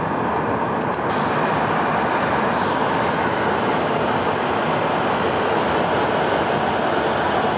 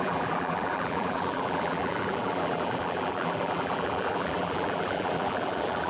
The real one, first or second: first